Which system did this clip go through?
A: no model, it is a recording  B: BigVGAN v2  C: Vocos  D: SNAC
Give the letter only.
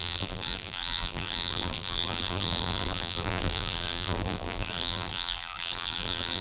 B